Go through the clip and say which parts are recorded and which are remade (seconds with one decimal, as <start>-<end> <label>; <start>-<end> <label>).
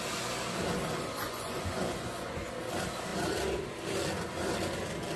0.0-1.2 recorded; 1.2-2.5 remade; 2.5-5.2 recorded